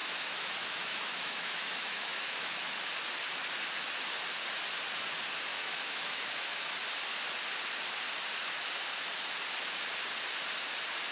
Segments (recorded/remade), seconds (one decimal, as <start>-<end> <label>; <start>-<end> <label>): 0.0-2.8 remade; 2.8-5.5 recorded; 5.5-6.7 remade; 6.7-11.1 recorded

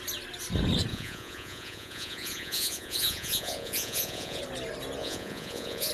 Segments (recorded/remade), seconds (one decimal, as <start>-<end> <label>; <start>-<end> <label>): 0.0-0.9 recorded; 0.9-4.4 remade; 4.4-5.0 recorded; 5.0-5.9 remade

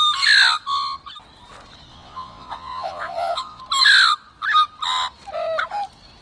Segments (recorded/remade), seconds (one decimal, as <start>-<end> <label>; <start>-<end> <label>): 0.0-1.9 recorded; 1.9-3.6 remade; 3.6-6.2 recorded

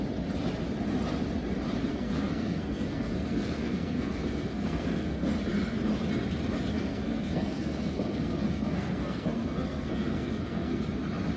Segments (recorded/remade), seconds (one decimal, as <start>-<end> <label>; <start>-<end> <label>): 0.0-1.9 recorded; 1.9-5.3 remade; 5.3-6.7 recorded; 6.7-10.8 remade; 10.8-11.4 recorded

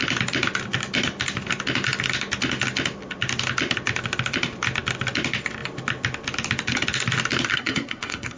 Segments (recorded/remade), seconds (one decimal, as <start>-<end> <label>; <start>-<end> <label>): 0.0-7.5 recorded; 7.5-8.4 remade

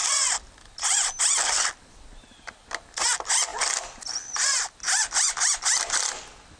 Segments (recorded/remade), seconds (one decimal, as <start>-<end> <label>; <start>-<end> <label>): 0.0-6.6 recorded

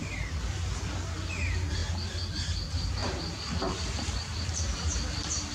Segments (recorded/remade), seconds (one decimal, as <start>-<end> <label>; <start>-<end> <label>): 0.0-1.8 remade; 1.8-2.3 recorded; 2.3-5.5 remade